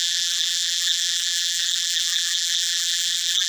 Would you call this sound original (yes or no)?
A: no